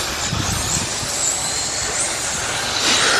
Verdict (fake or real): real